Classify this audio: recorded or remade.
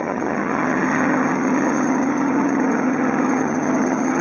remade